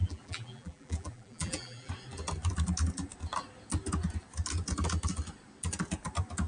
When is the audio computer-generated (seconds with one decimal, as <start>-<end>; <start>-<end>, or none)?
0.0-1.9